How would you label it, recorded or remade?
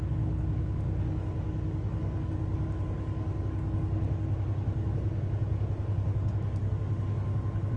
remade